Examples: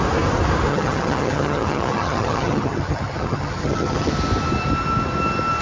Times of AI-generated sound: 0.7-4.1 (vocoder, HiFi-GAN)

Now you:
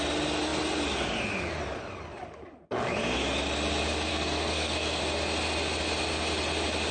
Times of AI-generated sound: 4.1-5.0 (codec, SNAC)

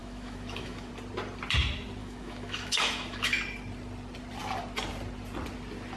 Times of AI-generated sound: 0.0-0.9 (autoencoder, DAC-VAE); 2.0-3.4